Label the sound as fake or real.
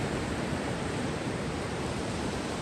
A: fake